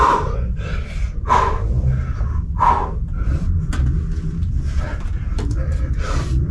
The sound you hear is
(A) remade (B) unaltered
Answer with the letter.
B